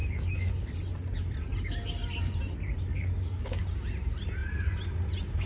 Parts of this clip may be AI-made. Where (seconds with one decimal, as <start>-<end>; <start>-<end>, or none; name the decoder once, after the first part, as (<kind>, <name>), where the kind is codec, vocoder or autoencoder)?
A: 0.0-0.5 (codec, DAC); 2.9-3.6